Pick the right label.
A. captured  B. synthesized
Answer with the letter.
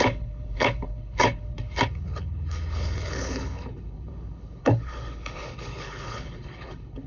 B